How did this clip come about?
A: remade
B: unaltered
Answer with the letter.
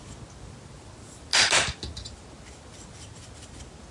B